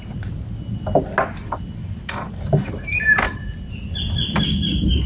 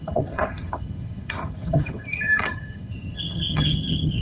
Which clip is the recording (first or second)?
first